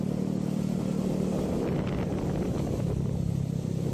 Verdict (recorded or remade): recorded